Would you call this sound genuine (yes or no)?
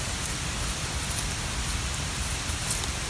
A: yes